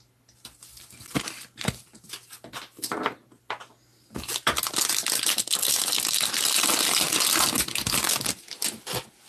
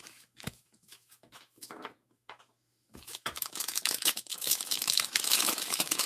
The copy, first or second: second